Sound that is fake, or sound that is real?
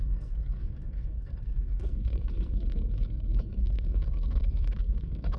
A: fake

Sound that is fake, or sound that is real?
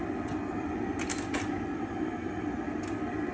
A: fake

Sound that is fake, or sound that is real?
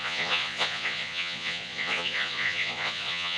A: fake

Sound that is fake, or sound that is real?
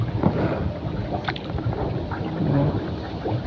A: real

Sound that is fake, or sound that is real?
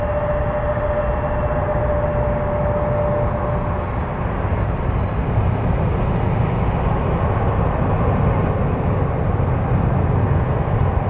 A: real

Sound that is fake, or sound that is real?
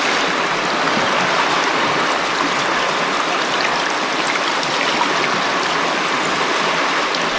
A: real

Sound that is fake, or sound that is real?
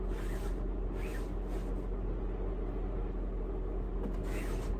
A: real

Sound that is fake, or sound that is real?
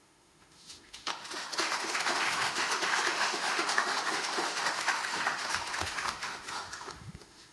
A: fake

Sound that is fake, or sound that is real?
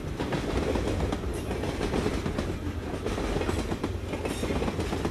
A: real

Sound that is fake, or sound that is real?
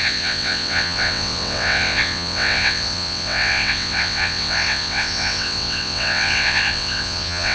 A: fake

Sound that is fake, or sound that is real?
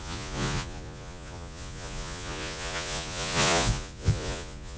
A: fake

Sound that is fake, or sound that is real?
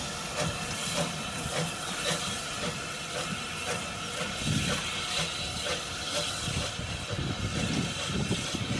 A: real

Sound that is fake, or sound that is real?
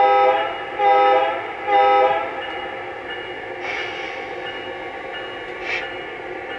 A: real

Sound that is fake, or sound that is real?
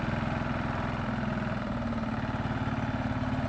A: real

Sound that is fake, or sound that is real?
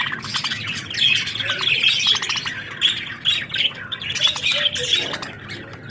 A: real